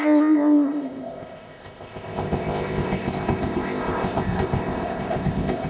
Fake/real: fake